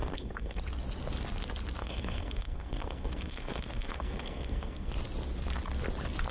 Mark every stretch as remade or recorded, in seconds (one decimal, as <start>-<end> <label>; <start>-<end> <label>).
0.0-0.6 remade; 0.6-1.8 recorded; 1.8-4.9 remade; 4.9-6.3 recorded

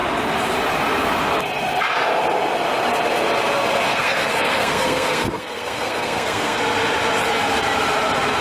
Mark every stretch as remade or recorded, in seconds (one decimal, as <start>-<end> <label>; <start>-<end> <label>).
0.0-3.9 recorded; 3.9-6.6 remade; 6.6-8.4 recorded